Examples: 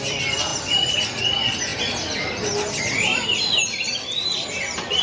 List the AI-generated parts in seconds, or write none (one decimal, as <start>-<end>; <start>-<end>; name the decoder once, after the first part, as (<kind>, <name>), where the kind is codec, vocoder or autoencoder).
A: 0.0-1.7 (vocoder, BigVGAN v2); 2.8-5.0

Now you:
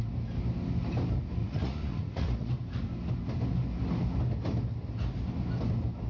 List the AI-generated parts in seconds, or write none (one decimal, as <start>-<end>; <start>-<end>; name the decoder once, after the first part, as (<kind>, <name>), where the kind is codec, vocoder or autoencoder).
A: 1.4-2.5 (vocoder, Vocos)

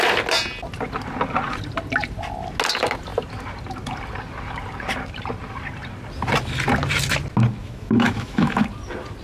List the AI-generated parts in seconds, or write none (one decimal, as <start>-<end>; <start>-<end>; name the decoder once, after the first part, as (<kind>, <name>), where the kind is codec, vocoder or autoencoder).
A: 7.6-8.6 (autoencoder, DAC-VAE)

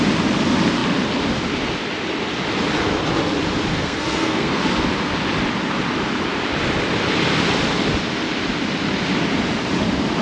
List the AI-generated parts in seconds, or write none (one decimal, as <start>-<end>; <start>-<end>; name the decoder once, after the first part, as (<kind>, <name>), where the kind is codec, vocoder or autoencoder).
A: 3.7-4.6 (codec, SNAC)

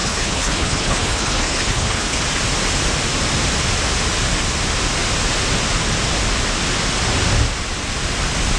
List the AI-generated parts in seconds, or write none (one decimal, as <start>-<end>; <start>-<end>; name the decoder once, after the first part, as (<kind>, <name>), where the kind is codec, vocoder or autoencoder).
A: 0.0-2.2 (codec, HILCodec)

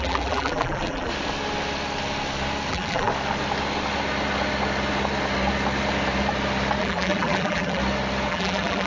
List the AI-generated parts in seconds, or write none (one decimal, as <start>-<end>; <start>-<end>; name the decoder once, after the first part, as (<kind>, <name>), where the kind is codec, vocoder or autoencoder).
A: 0.0-1.1 (vocoder, BigVGAN v2); 2.7-3.1; 6.8-7.8; 8.3-8.9